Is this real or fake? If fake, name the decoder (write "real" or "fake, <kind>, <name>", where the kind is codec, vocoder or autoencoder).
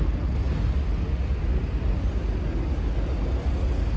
real